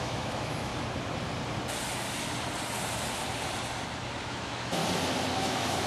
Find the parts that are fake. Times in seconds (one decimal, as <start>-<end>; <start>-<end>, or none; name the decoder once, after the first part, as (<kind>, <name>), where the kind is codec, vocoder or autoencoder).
0.0-0.7 (autoencoder, DAC-VAE); 4.2-4.8; 5.4-5.9